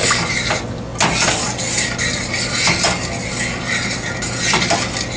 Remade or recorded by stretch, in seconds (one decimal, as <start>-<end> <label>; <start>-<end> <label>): 0.0-5.2 recorded